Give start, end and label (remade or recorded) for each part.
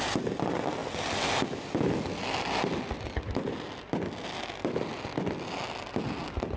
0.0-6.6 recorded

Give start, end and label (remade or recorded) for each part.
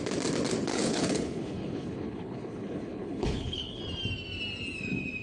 0.0-0.7 recorded; 0.7-3.8 remade; 3.8-5.2 recorded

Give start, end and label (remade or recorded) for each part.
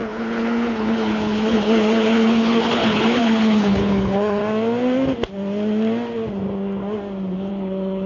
0.0-4.4 remade; 4.4-7.5 recorded; 7.5-8.1 remade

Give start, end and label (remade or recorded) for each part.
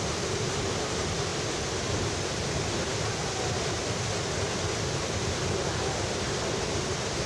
0.0-7.3 recorded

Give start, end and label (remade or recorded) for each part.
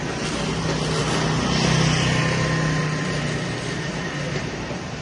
0.0-5.0 recorded